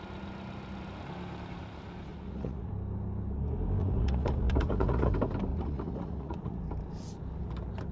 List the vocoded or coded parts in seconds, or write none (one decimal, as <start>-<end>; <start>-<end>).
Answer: 2.1-2.7; 3.8-5.1; 5.5-6.6